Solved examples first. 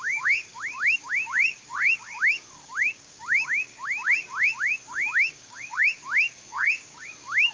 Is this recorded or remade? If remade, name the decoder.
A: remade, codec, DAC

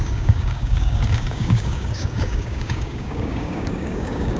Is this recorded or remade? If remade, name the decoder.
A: remade, codec, DAC